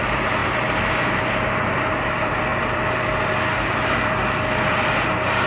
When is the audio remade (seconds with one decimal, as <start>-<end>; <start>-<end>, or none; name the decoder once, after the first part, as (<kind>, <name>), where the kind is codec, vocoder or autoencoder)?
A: 0.0-0.4 (vocoder, BigVGAN v2); 1.9-5.5